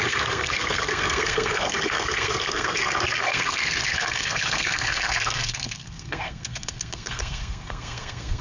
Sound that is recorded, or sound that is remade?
remade